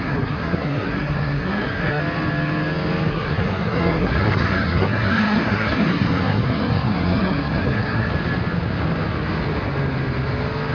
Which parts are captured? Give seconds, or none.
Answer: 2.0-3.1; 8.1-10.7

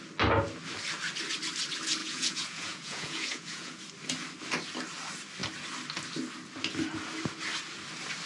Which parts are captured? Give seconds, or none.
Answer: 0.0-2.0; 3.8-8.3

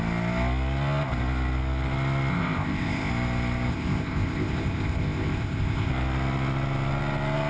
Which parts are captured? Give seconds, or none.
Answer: 0.0-2.3; 3.1-3.7; 5.9-7.5